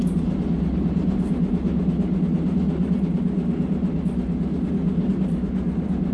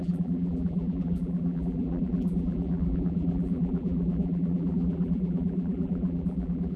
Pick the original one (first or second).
first